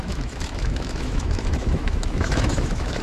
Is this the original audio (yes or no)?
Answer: no